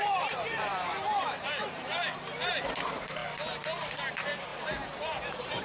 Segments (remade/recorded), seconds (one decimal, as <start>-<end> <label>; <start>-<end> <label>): 0.0-3.2 remade; 3.2-4.1 recorded; 4.1-5.6 remade